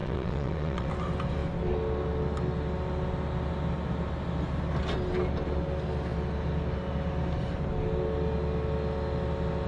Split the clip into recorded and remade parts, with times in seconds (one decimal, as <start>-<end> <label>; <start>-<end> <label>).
0.0-0.9 remade; 0.9-9.7 recorded

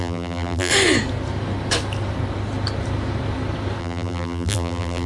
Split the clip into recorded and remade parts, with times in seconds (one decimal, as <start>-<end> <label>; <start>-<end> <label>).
0.0-0.7 remade; 0.7-3.8 recorded; 3.8-5.1 remade